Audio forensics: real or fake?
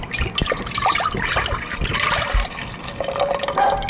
real